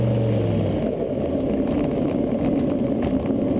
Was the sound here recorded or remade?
recorded